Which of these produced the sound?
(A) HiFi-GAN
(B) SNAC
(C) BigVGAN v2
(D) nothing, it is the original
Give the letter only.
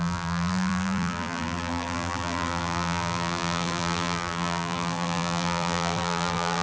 C